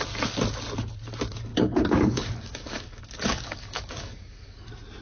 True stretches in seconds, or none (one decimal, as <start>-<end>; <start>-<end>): 0.0-1.5; 4.5-5.0